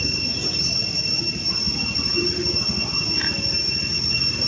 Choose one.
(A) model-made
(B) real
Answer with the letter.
B